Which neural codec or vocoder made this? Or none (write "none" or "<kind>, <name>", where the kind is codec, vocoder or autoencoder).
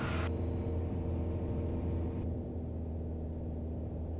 none